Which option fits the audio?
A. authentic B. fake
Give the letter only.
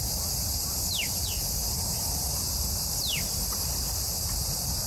A